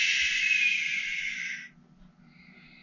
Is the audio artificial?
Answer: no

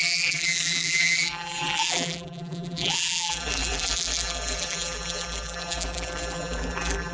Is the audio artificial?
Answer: yes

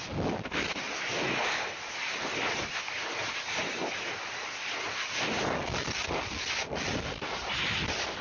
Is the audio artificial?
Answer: no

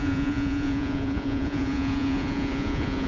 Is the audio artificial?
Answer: yes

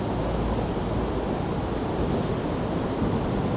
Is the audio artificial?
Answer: no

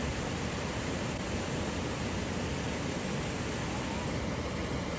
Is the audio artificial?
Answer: no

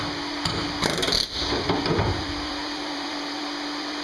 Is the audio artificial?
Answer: yes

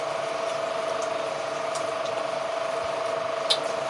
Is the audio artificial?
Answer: no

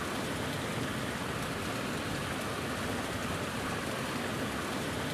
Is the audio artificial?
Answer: no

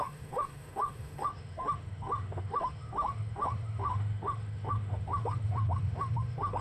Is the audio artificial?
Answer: yes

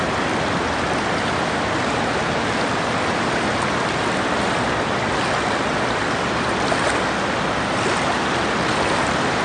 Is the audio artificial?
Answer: no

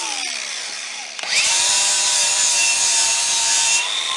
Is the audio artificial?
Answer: yes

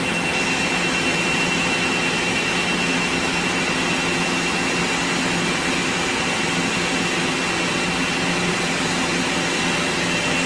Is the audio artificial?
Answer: no